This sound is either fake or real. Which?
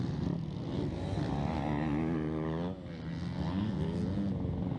real